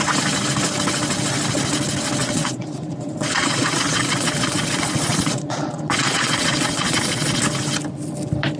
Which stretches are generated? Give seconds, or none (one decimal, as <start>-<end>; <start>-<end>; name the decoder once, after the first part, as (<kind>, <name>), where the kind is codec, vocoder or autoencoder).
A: 2.2-7.4 (vocoder, Vocos)